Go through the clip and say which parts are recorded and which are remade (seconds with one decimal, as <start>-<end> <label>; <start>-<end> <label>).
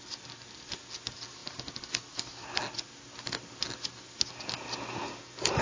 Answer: 0.0-5.6 recorded